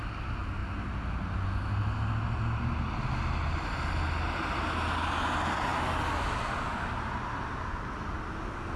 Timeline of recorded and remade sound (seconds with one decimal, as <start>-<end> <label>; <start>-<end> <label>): 0.0-8.8 recorded

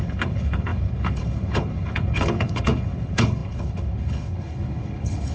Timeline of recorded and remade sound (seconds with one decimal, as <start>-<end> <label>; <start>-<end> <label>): 0.0-5.3 remade

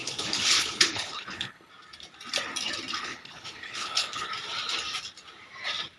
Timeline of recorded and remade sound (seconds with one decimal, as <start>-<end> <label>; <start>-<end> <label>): 0.0-1.7 remade; 1.7-3.0 recorded; 3.0-4.3 remade; 4.3-6.0 recorded